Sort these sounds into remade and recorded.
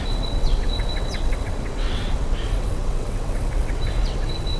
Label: remade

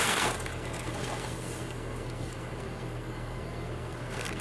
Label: remade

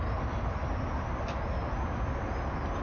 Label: recorded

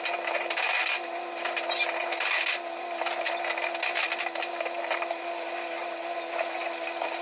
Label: recorded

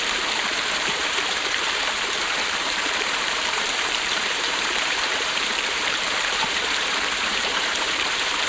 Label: remade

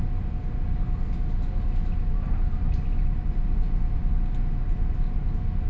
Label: recorded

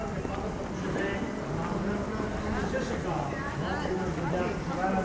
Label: recorded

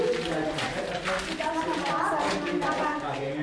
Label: recorded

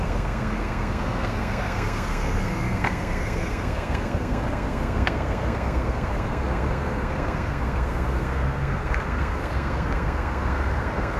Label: remade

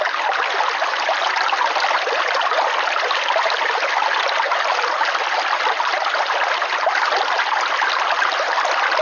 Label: recorded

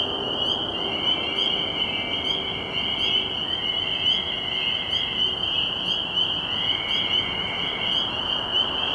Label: recorded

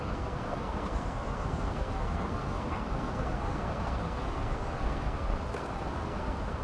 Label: remade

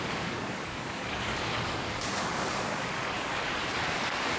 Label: remade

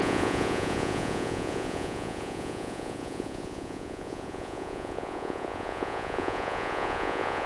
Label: remade